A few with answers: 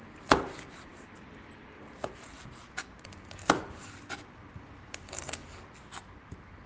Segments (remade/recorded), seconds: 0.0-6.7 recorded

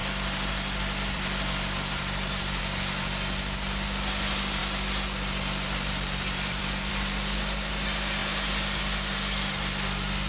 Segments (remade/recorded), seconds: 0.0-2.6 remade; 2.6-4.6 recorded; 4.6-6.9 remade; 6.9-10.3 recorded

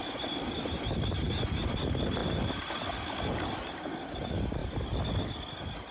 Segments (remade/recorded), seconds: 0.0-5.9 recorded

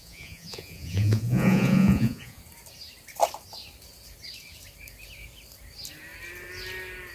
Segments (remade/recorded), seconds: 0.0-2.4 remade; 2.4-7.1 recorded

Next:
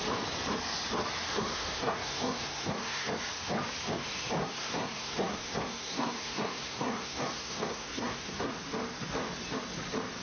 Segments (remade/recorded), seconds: 0.0-1.3 recorded; 1.3-3.1 remade; 3.1-4.4 recorded; 4.4-8.5 remade; 8.5-10.2 recorded

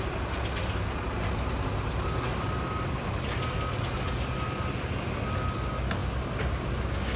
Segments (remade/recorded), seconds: 0.0-7.2 recorded